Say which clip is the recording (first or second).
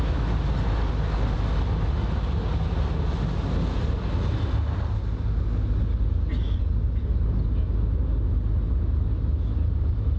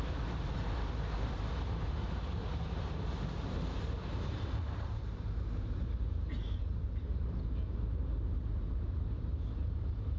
first